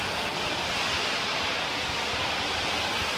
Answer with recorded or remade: recorded